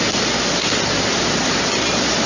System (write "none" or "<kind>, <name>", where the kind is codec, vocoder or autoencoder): none